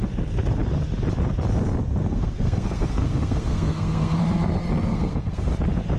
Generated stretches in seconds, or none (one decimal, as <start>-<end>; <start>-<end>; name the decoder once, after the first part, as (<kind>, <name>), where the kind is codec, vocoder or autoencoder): 2.0-4.2 (codec, SNAC); 4.9-5.5